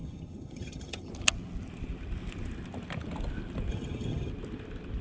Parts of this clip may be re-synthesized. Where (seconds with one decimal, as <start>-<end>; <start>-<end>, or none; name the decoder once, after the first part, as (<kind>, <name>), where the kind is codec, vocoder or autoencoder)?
0.0-1.1 (vocoder, HiFi-GAN); 3.7-4.3